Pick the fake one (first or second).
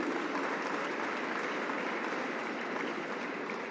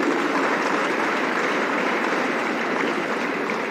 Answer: second